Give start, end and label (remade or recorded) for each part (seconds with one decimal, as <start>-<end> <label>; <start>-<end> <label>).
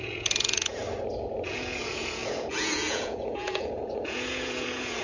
0.0-0.8 remade; 0.8-1.5 recorded; 1.5-5.0 remade